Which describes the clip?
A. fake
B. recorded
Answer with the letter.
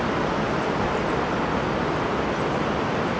B